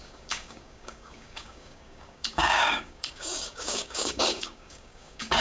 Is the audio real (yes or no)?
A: no